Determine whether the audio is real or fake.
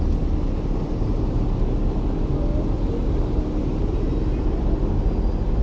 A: real